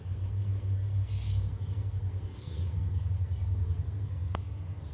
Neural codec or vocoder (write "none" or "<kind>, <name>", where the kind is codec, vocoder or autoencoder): codec, SNAC